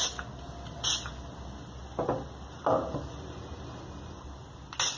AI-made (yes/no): no